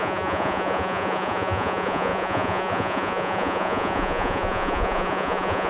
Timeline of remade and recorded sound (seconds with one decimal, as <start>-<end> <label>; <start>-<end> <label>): 0.0-5.7 remade